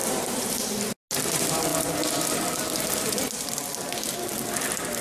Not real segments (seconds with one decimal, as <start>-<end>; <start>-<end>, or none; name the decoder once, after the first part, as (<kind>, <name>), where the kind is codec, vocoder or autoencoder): 0.0-0.6 (vocoder, BigVGAN v2)

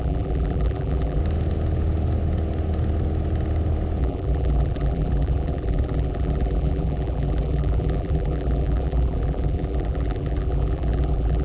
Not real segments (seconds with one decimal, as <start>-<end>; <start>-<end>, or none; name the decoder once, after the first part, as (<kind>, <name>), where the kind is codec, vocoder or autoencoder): 0.0-1.2 (vocoder, BigVGAN v2); 4.0-11.4

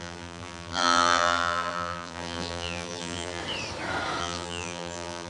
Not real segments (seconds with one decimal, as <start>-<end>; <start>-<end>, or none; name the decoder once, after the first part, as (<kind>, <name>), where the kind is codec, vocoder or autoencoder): 0.0-3.4 (vocoder, BigVGAN v2); 4.2-5.3

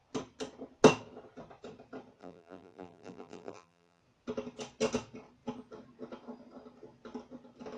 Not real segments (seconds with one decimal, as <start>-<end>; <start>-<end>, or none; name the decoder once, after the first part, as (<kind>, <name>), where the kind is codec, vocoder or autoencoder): 2.2-4.0 (vocoder, BigVGAN v2)

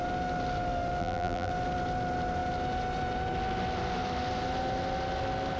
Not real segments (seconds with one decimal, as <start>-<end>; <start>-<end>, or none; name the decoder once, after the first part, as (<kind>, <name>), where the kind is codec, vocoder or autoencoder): 1.0-1.5 (vocoder, BigVGAN v2)